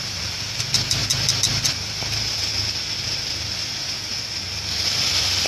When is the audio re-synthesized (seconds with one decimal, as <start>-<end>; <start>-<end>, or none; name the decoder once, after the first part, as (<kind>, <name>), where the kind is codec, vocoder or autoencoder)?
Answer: none